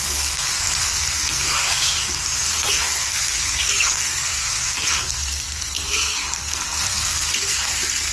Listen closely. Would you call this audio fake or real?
fake